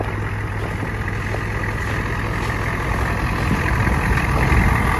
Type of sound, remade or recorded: recorded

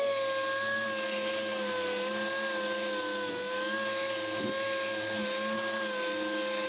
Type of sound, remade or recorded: recorded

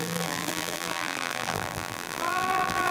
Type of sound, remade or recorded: remade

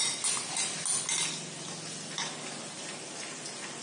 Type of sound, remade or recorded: recorded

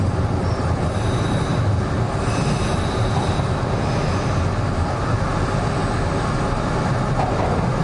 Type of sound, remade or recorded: recorded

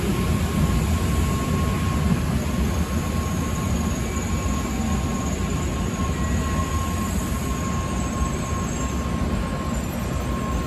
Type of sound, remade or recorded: recorded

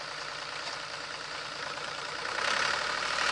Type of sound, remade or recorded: remade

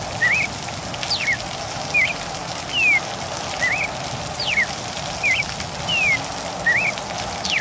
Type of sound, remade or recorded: recorded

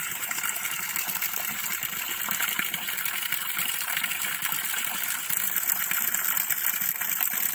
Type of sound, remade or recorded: recorded